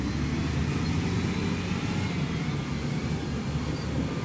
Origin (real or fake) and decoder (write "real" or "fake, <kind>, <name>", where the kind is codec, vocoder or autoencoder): real